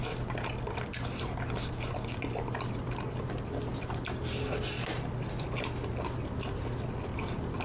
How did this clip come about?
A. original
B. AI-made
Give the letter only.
A